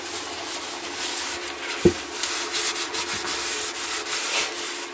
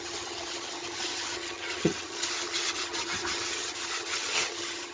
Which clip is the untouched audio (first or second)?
first